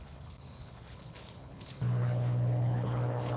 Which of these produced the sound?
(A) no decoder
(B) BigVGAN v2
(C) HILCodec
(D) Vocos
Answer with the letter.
C